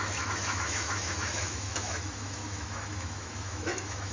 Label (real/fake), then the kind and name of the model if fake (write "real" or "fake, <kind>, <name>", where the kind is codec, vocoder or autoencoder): fake, autoencoder, DAC-VAE